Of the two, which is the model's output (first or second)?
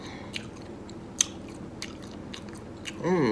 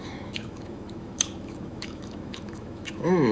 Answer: second